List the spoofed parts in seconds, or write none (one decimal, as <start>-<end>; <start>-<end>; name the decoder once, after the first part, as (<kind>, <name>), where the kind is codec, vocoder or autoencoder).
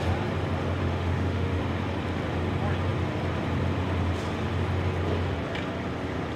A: 0.8-1.6 (autoencoder, DAC-VAE)